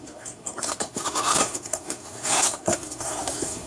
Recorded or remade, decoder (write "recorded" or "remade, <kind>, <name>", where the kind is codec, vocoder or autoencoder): remade, codec, SNAC